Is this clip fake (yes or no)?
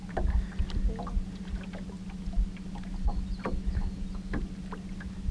no